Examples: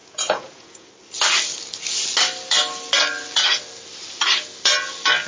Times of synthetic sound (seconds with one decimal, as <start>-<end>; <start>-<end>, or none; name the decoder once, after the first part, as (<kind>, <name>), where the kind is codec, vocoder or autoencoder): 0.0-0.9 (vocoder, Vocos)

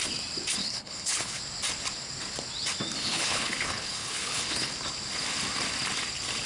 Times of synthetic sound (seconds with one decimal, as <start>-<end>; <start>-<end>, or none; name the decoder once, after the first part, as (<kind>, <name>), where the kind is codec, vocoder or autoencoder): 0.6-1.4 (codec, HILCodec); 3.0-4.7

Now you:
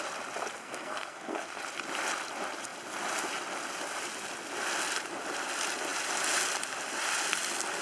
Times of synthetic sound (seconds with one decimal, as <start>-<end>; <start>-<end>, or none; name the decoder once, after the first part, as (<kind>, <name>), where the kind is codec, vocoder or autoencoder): 0.6-1.6 (codec, SNAC)

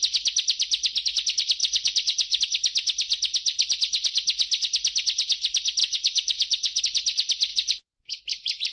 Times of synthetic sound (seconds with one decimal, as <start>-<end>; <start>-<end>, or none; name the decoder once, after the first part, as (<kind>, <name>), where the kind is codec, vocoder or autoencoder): 1.6-2.4 (vocoder, Vocos); 5.8-6.8; 7.5-8.2

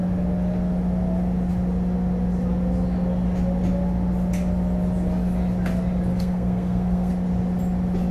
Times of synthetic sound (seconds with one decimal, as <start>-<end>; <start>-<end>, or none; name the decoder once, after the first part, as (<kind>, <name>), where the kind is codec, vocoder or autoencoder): 6.1-7.1 (codec, SNAC)